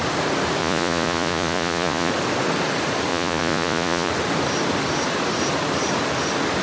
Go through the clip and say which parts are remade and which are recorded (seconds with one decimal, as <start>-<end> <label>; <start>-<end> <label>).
0.0-0.6 recorded; 0.6-2.1 remade; 2.1-3.1 recorded; 3.1-4.1 remade; 4.1-6.6 recorded